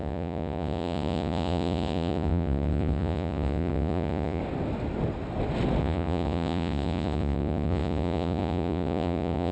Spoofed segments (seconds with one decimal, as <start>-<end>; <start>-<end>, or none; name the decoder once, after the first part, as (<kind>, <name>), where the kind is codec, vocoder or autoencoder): 0.0-4.4 (vocoder, Vocos); 5.8-9.5